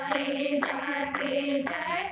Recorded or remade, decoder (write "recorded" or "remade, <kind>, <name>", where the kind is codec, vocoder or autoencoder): remade, vocoder, BigVGAN v2